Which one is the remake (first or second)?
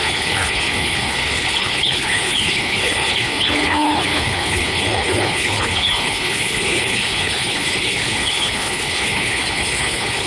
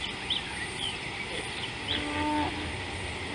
first